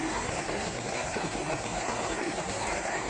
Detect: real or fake fake